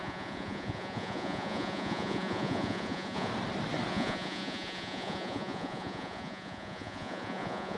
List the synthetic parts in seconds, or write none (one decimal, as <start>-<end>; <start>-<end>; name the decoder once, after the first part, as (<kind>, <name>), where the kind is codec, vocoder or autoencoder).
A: 0.0-3.3 (vocoder, Vocos); 3.9-7.8